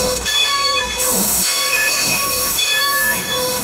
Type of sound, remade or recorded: remade